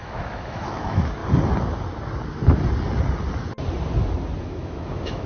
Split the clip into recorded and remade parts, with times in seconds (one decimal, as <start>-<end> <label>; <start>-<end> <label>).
0.0-1.2 remade; 1.2-4.4 recorded; 4.4-5.3 remade